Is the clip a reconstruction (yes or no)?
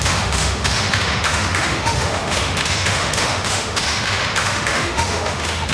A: yes